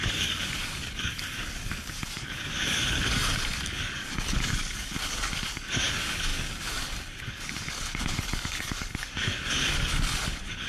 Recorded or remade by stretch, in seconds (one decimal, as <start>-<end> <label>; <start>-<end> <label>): 0.0-10.7 remade